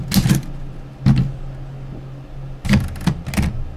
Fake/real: real